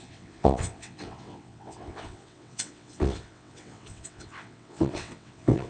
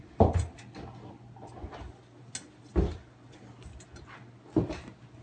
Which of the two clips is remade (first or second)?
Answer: first